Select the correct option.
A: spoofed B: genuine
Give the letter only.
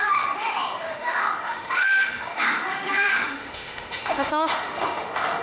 A